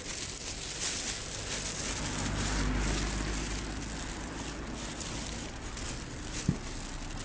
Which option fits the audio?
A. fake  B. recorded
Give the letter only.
B